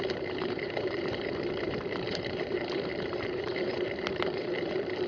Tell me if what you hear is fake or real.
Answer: fake